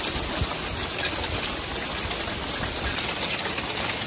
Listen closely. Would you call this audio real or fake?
real